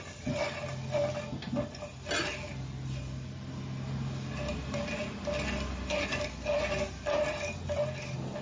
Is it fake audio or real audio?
real